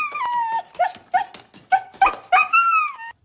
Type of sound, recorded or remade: recorded